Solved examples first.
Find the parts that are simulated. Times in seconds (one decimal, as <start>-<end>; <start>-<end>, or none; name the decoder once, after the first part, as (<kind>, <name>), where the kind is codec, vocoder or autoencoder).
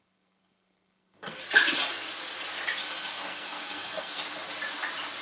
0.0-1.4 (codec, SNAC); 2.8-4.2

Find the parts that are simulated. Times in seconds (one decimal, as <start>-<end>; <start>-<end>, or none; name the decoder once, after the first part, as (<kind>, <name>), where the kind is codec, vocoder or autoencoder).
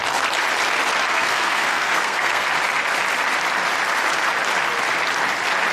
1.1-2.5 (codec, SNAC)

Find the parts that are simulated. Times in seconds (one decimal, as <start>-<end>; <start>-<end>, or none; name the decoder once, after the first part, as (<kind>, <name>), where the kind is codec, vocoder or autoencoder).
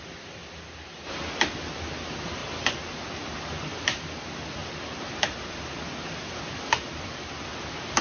0.0-0.9 (vocoder, BigVGAN v2); 1.9-4.6; 7.0-8.0